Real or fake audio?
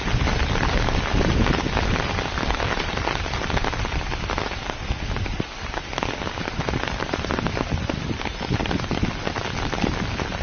real